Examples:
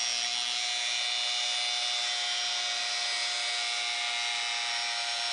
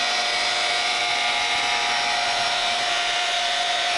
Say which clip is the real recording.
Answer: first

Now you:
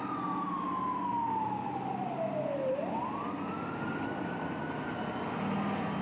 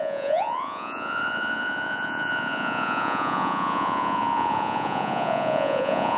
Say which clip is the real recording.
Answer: first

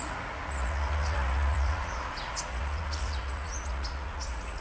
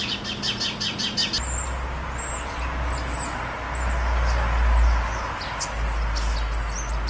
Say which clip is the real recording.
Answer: second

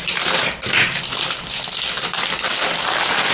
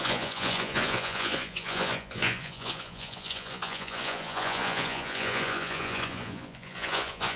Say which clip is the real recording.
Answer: first